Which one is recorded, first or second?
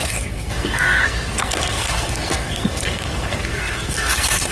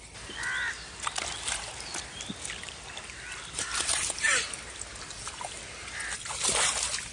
second